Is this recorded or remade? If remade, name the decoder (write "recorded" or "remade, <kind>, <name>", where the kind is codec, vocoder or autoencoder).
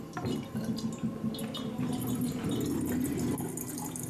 recorded